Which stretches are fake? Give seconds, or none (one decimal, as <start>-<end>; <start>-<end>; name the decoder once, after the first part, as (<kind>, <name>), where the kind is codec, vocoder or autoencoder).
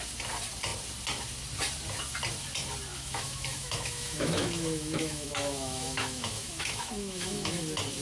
2.9-7.6 (autoencoder, DAC-VAE)